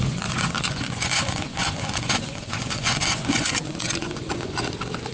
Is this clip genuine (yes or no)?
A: no